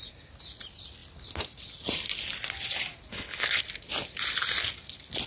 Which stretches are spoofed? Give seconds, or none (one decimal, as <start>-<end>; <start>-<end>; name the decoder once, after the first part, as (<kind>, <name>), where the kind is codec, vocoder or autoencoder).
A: 3.1-3.6 (codec, HILCodec)